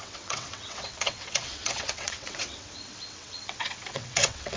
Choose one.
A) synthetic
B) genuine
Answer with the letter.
A